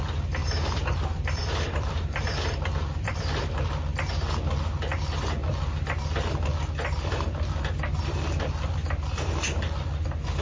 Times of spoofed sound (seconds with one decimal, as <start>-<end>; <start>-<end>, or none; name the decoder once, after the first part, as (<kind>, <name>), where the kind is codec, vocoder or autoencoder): 0.4-3.4 (vocoder, BigVGAN v2)